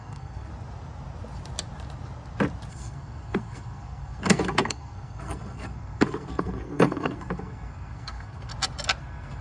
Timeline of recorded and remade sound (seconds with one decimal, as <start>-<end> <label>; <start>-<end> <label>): 0.0-0.5 remade; 0.5-2.7 recorded; 2.7-8.5 remade; 8.5-9.0 recorded; 9.0-9.4 remade